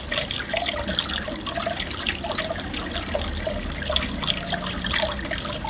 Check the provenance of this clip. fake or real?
real